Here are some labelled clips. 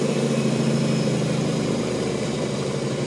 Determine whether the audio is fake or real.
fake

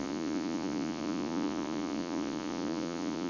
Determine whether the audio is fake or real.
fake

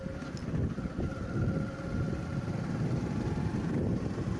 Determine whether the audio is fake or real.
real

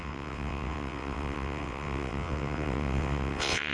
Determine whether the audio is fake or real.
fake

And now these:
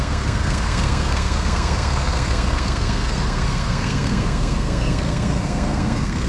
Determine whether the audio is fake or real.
fake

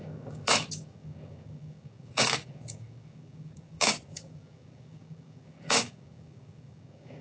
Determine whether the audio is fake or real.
fake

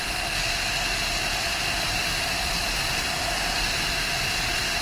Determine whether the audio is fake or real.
real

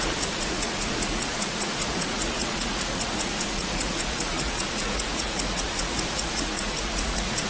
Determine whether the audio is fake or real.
fake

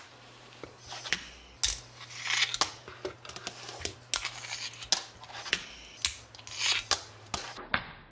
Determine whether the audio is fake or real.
real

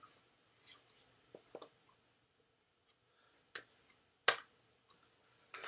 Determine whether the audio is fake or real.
real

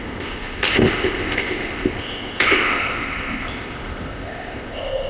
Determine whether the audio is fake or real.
fake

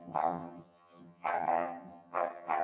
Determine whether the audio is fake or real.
fake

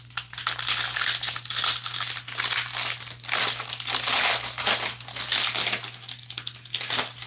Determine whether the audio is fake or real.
real